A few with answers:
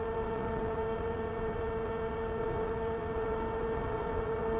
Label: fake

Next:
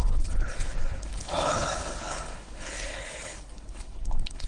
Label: fake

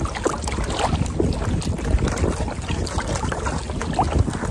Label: real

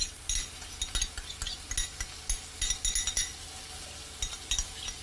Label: real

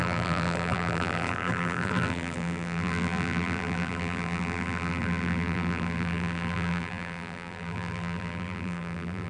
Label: fake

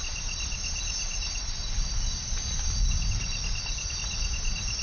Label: real